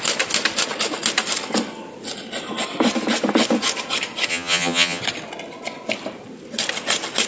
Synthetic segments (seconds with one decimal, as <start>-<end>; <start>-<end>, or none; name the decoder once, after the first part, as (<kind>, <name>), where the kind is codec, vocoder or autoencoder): 4.3-5.0 (vocoder, HiFi-GAN)